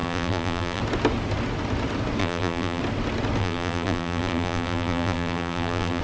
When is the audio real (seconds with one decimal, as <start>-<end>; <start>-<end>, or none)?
0.8-2.2; 2.8-3.4